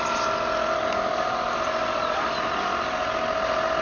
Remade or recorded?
recorded